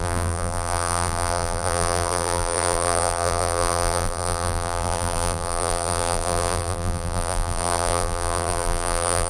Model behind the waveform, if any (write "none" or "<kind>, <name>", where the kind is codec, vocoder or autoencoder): vocoder, BigVGAN v2